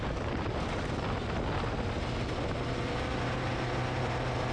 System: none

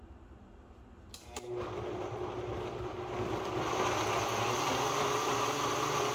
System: none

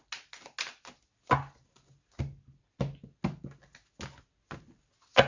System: none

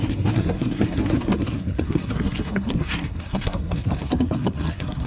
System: codec, SNAC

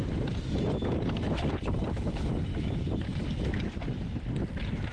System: none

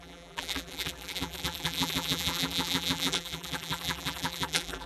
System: vocoder, BigVGAN v2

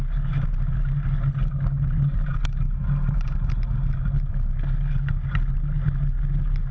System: none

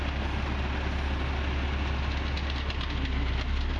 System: none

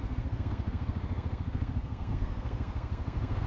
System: codec, SNAC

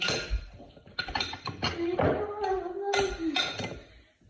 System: none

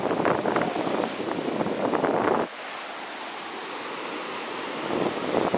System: none